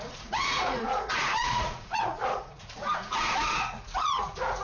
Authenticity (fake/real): fake